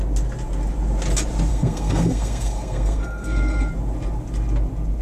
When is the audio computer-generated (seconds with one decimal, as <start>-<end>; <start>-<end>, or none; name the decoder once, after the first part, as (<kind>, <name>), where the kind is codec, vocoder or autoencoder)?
1.5-3.7 (codec, SNAC)